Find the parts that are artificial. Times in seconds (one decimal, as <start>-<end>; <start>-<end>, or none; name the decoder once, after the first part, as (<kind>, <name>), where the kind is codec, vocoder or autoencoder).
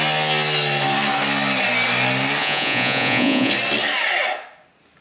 2.4-3.5 (vocoder, Vocos)